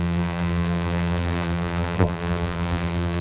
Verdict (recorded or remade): remade